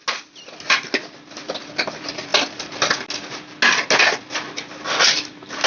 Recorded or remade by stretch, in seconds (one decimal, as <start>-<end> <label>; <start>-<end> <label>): 0.0-5.7 recorded